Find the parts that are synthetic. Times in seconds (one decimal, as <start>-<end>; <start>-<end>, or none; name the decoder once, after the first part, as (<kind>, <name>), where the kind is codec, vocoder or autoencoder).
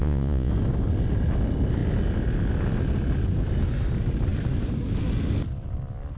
0.0-0.5 (vocoder, Vocos)